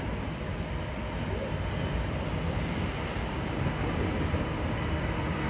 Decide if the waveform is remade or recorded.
recorded